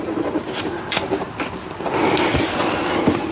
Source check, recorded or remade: recorded